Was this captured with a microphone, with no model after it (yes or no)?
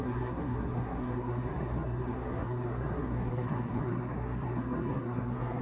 no